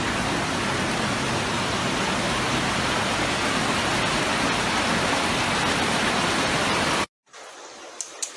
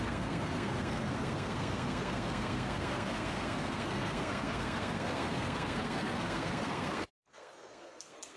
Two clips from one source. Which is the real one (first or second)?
first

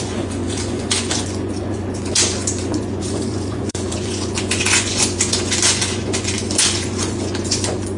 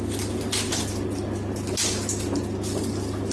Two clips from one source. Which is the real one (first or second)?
second